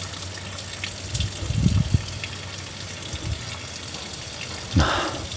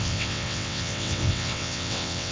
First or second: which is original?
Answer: first